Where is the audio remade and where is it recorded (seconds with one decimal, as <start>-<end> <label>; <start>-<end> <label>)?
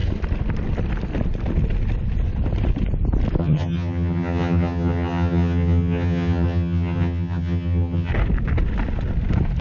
0.0-3.4 recorded; 3.4-8.1 remade; 8.1-9.6 recorded